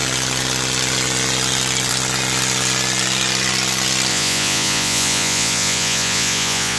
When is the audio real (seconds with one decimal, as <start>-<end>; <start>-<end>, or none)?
0.0-4.1